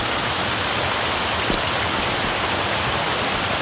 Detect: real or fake real